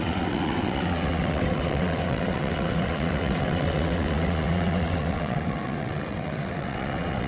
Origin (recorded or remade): remade